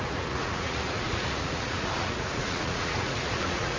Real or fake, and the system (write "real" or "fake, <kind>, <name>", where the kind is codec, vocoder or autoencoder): fake, vocoder, Vocos